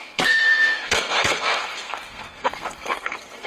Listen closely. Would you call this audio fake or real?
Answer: fake